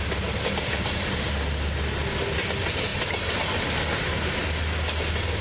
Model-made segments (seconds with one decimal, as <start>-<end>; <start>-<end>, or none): none

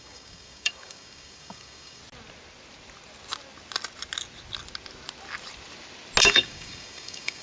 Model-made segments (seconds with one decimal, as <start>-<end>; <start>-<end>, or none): 0.0-2.0; 6.2-7.4

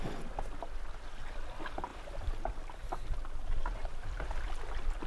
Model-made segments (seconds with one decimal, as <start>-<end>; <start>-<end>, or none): 1.9-2.4; 3.8-5.1

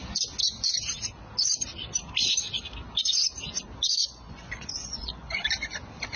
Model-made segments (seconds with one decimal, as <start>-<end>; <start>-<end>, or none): 4.0-5.5

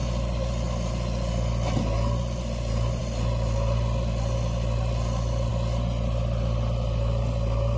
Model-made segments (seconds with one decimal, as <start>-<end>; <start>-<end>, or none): none